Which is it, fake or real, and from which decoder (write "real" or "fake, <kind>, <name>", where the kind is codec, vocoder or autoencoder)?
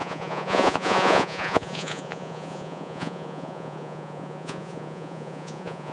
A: fake, vocoder, Vocos